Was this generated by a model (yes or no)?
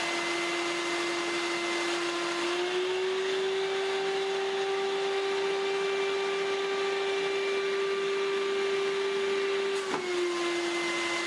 no